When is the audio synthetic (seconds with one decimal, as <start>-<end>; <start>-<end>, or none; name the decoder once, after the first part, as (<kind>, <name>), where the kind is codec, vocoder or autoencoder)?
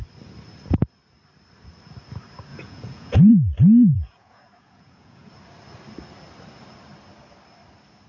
2.5-3.3 (vocoder, Vocos); 3.9-5.3